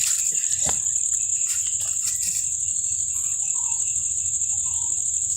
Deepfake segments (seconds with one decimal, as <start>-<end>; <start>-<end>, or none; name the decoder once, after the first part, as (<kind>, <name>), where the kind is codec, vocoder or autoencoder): 0.0-1.3 (vocoder, BigVGAN v2); 4.1-5.4